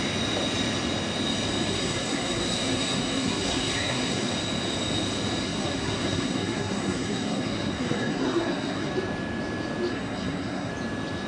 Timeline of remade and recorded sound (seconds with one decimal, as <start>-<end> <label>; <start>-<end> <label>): 0.0-1.7 recorded; 1.7-4.3 remade; 4.3-5.4 recorded; 5.4-8.9 remade; 8.9-9.9 recorded; 9.9-10.7 remade; 10.7-11.3 recorded